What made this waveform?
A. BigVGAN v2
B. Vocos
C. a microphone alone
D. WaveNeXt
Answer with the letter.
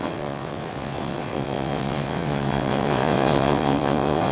D